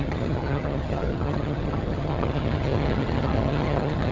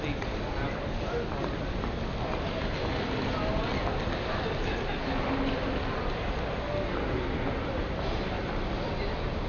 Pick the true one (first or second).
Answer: second